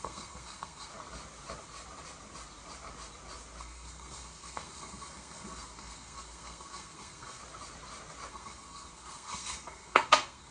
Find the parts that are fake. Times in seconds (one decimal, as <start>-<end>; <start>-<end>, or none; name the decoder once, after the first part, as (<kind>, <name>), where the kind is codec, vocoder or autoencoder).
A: 0.0-0.9 (codec, SNAC); 3.6-7.4; 8.3-10.5